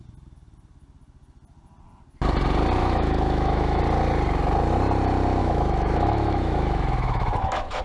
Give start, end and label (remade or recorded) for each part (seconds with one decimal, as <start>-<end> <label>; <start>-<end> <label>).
0.0-2.8 recorded; 2.8-3.8 remade; 3.8-5.4 recorded; 5.4-7.8 remade